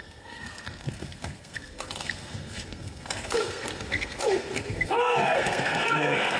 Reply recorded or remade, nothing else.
remade